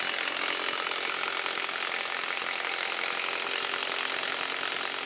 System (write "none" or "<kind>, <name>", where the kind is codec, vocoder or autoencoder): none